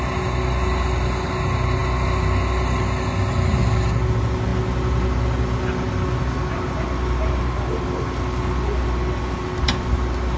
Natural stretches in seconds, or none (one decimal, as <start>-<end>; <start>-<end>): 0.0-10.4